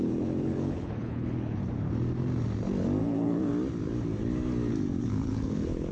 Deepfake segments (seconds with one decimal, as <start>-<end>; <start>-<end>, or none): 0.0-1.6; 3.0-3.5; 5.0-5.9